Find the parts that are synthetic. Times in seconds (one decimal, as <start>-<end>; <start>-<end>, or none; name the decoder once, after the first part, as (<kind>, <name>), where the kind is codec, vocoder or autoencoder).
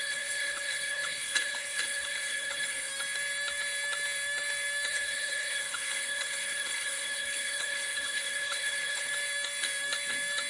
0.0-2.9 (codec, HILCodec); 4.9-9.1